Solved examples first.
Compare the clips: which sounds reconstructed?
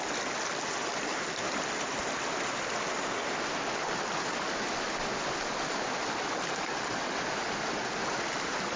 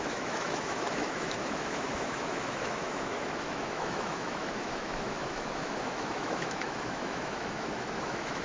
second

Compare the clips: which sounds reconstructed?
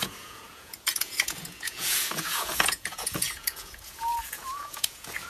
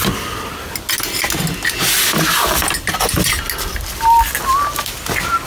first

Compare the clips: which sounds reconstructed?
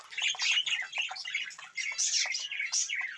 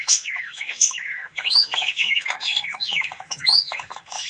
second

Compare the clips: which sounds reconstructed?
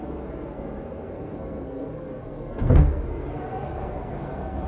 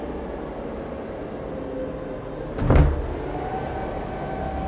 first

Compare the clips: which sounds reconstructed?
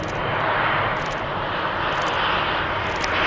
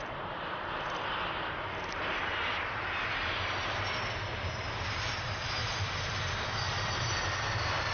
second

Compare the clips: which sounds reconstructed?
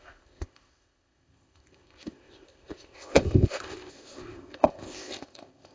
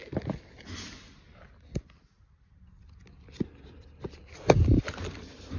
first